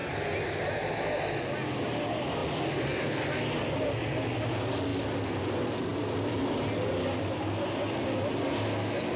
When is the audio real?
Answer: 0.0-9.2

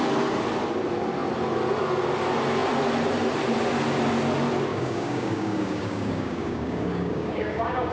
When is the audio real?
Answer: 0.0-4.7

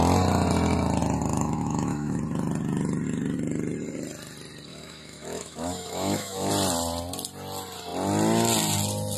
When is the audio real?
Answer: 0.0-1.3; 2.2-4.7; 6.5-9.2

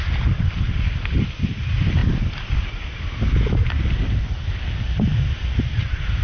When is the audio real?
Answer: 0.0-6.2